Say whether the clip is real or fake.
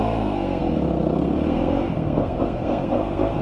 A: fake